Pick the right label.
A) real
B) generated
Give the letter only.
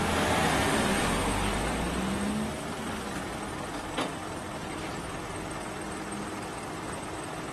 A